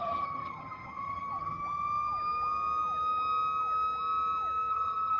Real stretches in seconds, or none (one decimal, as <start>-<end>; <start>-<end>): 1.6-4.7